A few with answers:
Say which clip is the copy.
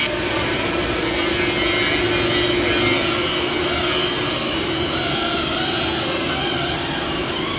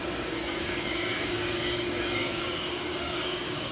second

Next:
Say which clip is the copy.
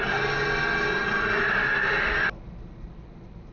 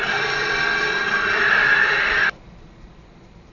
second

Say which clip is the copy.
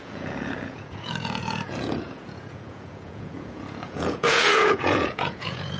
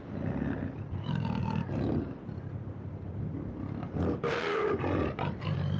first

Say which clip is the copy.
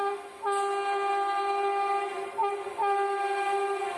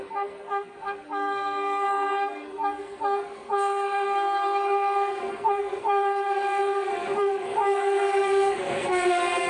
second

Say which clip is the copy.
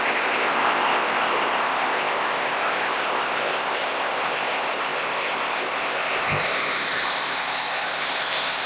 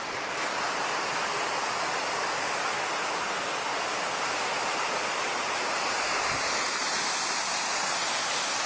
first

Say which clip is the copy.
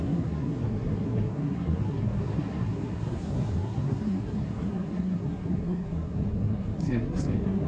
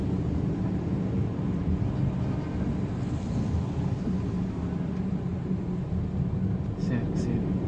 first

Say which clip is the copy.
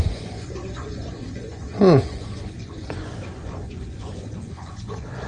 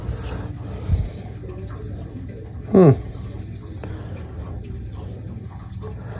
first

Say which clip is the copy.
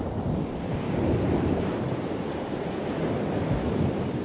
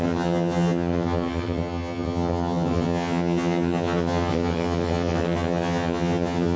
second